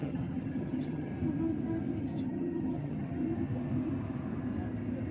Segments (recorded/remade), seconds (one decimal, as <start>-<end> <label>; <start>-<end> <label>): 0.0-1.1 remade; 1.1-2.0 recorded; 2.0-3.2 remade; 3.2-5.1 recorded